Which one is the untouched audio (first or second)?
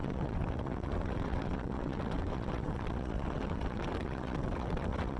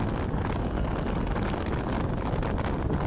second